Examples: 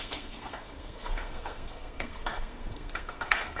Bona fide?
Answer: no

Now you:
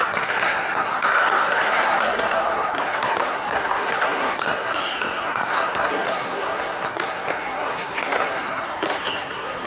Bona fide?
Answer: no